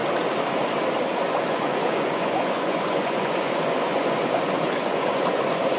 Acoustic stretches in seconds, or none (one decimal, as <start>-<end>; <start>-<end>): 0.0-1.2